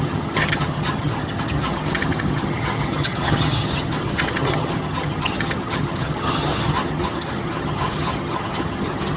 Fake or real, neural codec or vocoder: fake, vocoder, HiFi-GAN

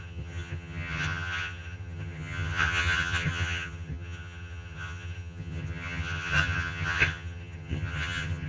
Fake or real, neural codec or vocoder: fake, vocoder, HiFi-GAN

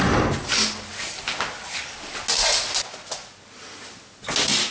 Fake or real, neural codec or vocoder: real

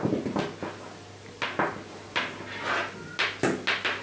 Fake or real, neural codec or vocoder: real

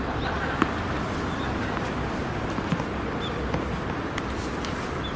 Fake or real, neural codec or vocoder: real